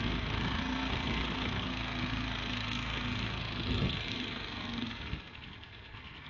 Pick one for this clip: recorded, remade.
remade